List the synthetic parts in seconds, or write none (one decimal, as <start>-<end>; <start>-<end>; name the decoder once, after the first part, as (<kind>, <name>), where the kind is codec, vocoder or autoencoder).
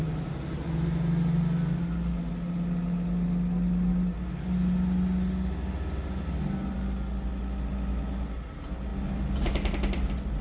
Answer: none